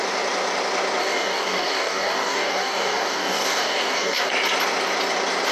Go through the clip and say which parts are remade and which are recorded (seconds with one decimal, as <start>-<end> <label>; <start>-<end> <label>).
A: 0.0-1.0 recorded; 1.0-4.3 remade; 4.3-5.5 recorded